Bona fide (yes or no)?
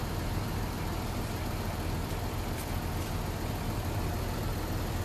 yes